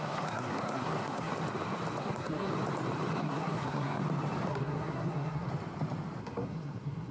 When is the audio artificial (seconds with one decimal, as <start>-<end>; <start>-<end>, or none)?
0.0-1.3; 2.0-2.5; 3.2-4.0; 4.5-5.5; 6.2-7.1